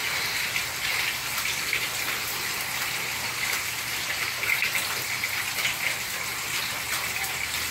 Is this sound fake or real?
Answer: real